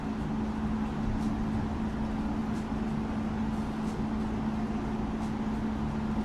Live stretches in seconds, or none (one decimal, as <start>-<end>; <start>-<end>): 0.0-6.2